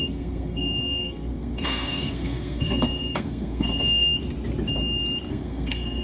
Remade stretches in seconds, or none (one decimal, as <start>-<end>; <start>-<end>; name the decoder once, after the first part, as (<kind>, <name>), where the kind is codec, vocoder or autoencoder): 0.0-4.1 (codec, SNAC); 5.3-6.0